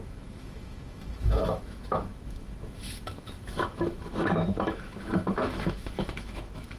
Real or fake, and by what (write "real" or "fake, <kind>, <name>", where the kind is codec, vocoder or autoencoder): fake, autoencoder, DAC-VAE